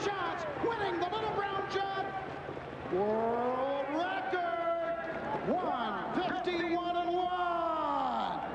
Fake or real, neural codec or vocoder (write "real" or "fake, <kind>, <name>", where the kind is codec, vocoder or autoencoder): real